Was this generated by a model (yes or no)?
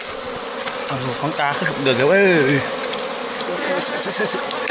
no